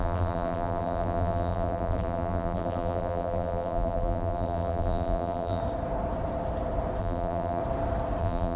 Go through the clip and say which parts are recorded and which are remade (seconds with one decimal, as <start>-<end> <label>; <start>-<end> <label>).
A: 0.0-5.6 remade; 5.6-7.0 recorded; 7.0-7.6 remade; 7.6-8.2 recorded; 8.2-8.6 remade